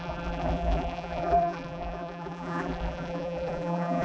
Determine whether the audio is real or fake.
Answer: fake